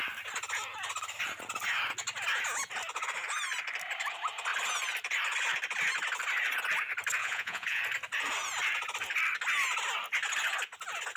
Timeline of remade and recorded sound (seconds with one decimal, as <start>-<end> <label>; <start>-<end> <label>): 0.0-7.2 recorded; 7.2-7.8 remade; 7.8-11.2 recorded